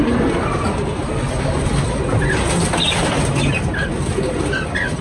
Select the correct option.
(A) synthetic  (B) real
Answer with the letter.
B